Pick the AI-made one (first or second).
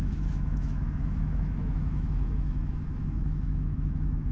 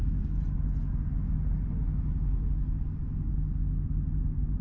first